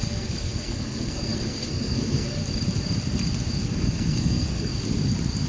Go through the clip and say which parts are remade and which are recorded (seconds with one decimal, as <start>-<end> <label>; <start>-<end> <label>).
0.0-2.4 remade; 2.4-3.6 recorded; 3.6-4.7 remade; 4.7-5.5 recorded

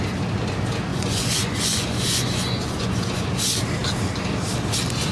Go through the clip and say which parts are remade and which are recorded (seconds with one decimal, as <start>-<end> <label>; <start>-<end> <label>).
0.0-0.9 recorded; 0.9-3.3 remade; 3.3-5.1 recorded

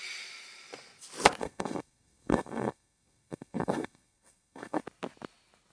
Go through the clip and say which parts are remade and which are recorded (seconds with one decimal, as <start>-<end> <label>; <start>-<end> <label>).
0.0-1.4 recorded; 1.4-4.8 remade; 4.8-5.7 recorded

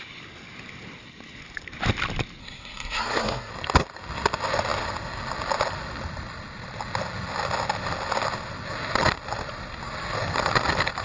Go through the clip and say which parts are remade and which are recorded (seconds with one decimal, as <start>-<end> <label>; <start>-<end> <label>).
0.0-2.4 recorded; 2.4-3.5 remade; 3.5-11.0 recorded

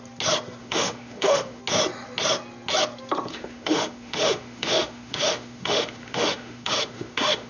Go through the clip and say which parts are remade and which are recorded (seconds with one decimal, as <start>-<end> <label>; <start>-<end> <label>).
0.0-0.6 recorded; 0.6-1.6 remade; 1.6-3.3 recorded; 3.3-7.5 remade

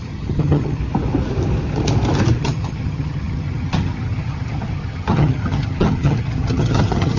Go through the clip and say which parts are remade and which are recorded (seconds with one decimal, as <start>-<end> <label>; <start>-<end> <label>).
0.0-0.8 remade; 0.8-2.4 recorded; 2.4-7.2 remade